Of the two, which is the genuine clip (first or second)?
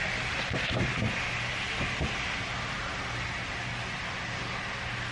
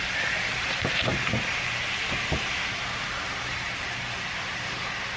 first